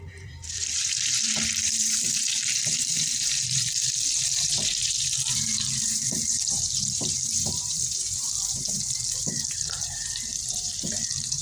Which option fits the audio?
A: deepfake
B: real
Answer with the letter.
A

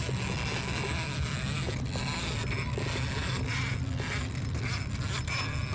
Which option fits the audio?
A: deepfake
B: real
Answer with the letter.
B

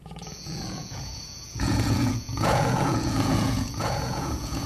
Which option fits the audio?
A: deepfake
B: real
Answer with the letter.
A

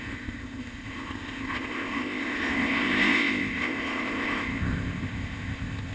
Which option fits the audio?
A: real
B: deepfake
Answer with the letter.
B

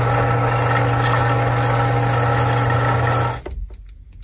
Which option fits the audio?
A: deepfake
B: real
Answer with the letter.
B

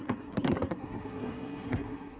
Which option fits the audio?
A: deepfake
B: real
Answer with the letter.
A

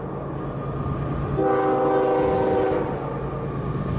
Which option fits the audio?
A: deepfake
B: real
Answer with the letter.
B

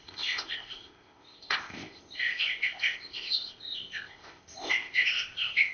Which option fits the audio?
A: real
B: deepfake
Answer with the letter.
B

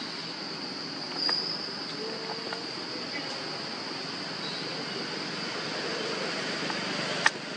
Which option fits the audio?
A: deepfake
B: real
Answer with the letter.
B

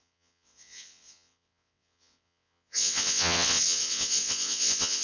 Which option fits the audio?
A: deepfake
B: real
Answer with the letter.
A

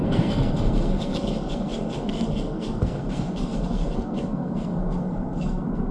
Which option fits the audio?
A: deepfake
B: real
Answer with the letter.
A